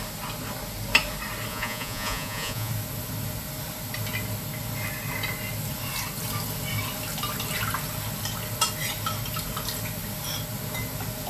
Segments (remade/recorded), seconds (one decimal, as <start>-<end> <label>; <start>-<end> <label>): 0.0-1.5 recorded; 1.5-2.7 remade; 2.7-11.3 recorded